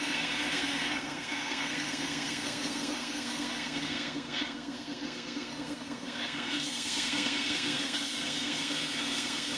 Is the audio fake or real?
fake